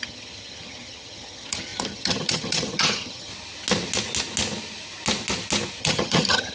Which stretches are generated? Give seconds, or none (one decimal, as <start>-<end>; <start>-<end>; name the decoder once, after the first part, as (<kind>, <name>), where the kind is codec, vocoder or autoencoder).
0.0-3.3 (vocoder, HiFi-GAN); 5.8-6.5